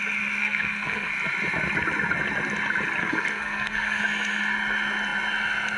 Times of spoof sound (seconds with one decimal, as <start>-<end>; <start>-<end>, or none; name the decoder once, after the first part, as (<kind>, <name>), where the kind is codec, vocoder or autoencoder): 0.4-1.1 (codec, SNAC); 3.0-4.0